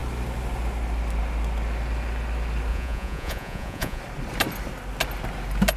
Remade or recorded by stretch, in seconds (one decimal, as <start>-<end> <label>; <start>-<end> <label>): 0.0-2.7 recorded; 2.7-4.0 remade; 4.0-5.8 recorded